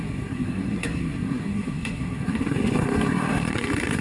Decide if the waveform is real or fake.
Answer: fake